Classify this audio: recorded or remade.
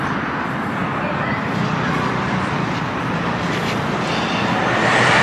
recorded